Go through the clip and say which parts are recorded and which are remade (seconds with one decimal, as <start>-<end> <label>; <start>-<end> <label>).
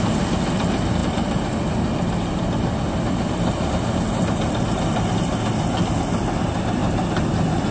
0.0-7.7 recorded